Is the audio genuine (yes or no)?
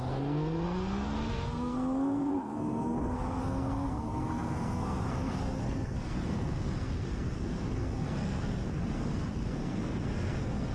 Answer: no